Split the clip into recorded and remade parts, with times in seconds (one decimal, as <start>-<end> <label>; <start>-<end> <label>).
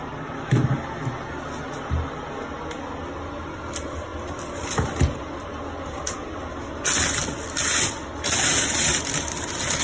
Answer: 0.0-9.8 recorded